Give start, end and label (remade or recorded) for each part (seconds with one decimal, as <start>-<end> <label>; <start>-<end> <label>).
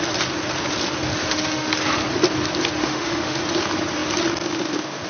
0.0-1.2 recorded; 1.2-1.7 remade; 1.7-2.8 recorded; 2.8-3.4 remade; 3.4-5.1 recorded